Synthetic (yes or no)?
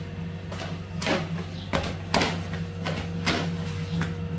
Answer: no